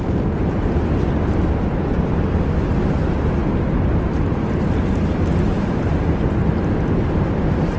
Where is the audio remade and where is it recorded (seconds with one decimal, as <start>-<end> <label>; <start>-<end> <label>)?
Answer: 0.0-7.8 recorded